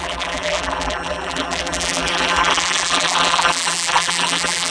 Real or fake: fake